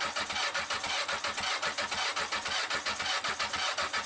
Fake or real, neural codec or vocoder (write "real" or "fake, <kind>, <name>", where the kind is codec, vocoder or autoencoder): real